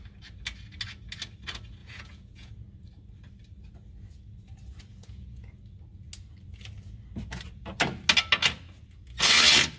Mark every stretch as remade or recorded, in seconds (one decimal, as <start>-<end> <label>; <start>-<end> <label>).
0.0-1.8 recorded; 1.8-2.5 remade; 2.5-4.9 recorded; 4.9-5.6 remade; 5.6-9.8 recorded